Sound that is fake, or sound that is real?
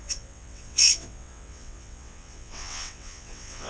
fake